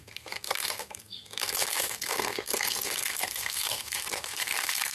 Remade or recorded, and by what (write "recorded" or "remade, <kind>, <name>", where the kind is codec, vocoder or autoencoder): remade, codec, SNAC